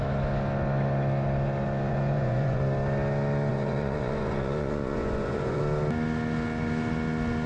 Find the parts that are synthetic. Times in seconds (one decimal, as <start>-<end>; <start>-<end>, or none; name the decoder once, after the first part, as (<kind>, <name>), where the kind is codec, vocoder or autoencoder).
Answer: 1.9-2.6 (vocoder, Vocos); 3.5-5.6